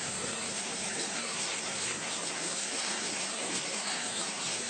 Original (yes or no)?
no